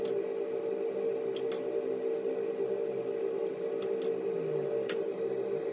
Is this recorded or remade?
recorded